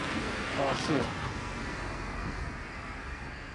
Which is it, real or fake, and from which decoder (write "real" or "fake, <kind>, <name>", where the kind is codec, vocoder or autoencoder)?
fake, codec, SNAC